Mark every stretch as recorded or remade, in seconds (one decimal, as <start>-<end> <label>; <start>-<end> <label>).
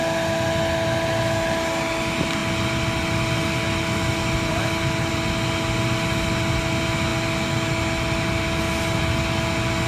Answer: 0.0-9.9 recorded